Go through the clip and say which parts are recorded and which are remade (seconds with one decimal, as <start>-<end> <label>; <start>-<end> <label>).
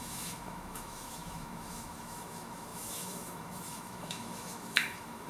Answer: 0.0-5.3 remade